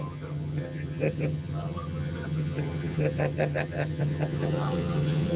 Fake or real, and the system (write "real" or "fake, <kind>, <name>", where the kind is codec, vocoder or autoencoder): fake, vocoder, HiFi-GAN